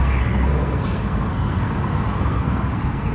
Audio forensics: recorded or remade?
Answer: remade